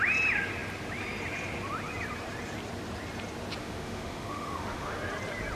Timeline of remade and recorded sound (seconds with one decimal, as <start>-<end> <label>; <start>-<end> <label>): 0.0-3.6 recorded; 3.6-5.0 remade; 5.0-5.6 recorded